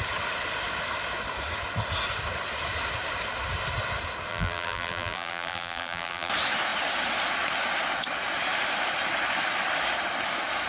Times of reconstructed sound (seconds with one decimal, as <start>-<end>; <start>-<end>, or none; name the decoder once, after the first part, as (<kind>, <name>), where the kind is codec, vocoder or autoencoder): 4.3-6.3 (vocoder, BigVGAN v2)